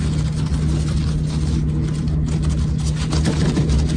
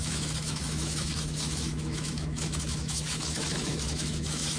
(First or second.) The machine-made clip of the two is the second